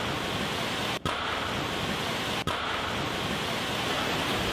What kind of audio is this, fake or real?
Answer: real